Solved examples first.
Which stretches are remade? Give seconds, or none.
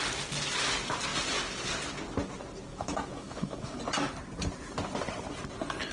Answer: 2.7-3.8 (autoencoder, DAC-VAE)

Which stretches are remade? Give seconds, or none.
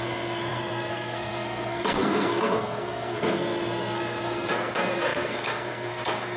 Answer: 0.0-6.4 (codec, SNAC)